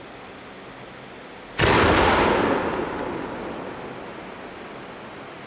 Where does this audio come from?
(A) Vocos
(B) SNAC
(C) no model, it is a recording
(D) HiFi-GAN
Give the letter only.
C